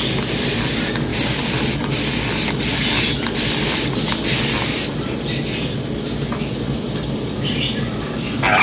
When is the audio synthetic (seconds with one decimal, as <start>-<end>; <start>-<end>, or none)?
none